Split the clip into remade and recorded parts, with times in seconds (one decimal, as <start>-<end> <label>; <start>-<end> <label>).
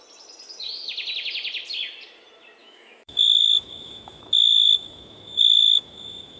0.0-2.6 recorded; 2.6-6.4 remade